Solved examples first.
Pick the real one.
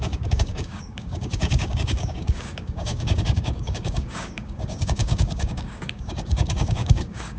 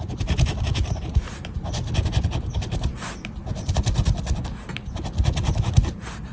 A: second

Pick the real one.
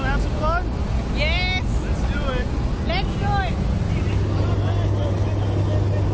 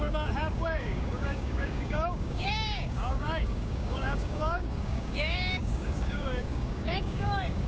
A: first